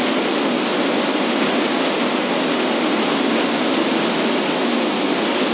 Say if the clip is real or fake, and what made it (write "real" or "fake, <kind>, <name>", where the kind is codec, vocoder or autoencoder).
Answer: real